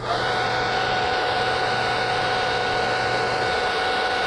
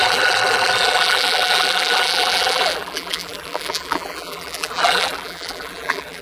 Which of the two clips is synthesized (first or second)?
second